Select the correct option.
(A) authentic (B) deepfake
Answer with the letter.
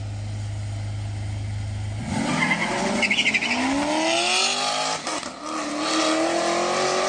A